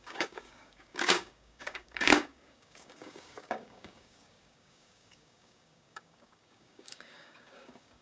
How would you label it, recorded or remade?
remade